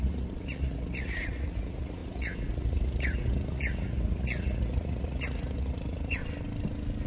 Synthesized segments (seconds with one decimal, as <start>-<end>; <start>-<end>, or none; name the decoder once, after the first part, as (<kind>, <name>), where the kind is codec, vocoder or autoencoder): 0.0-6.2 (vocoder, Vocos)